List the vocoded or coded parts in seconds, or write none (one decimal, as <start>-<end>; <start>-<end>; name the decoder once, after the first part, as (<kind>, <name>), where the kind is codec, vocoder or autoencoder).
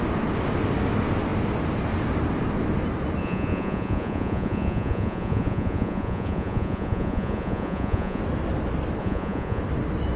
3.2-8.2 (vocoder, Vocos); 9.0-9.6